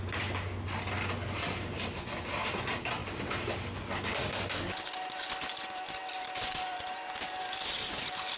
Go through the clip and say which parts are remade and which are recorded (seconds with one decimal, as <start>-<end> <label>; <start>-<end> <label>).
0.0-8.4 recorded